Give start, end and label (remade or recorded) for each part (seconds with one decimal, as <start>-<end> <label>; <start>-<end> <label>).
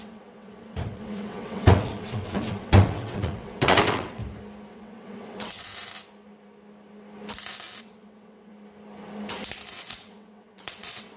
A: 0.0-4.2 remade; 4.2-4.7 recorded; 4.7-5.7 remade; 5.7-7.8 recorded; 7.8-8.5 remade; 8.5-9.7 recorded; 9.7-11.2 remade